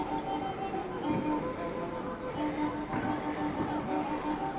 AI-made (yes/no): no